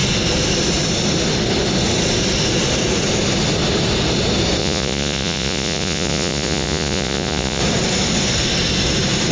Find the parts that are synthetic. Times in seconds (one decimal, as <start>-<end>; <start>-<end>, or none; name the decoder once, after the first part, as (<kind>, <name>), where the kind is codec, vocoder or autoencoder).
4.6-7.6 (vocoder, Vocos)